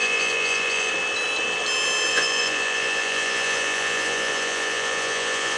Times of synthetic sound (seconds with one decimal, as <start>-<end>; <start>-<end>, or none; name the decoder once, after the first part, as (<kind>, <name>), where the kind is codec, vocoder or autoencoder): 0.0-0.9 (vocoder, Vocos); 2.1-5.6